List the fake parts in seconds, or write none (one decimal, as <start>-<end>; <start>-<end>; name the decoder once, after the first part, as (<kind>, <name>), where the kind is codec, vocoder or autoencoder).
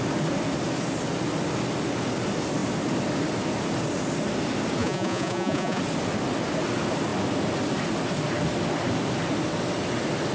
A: 4.8-5.8 (vocoder, Vocos)